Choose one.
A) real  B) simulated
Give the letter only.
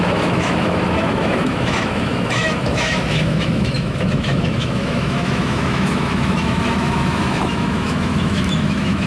B